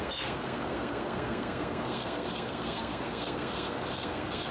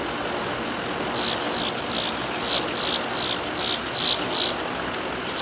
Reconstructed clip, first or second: first